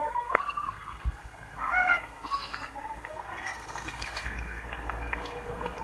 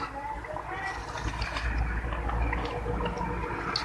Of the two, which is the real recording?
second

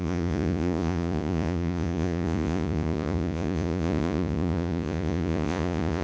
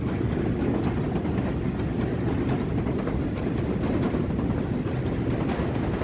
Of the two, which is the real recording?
second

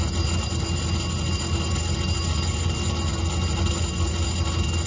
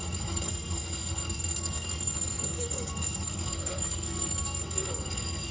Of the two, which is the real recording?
first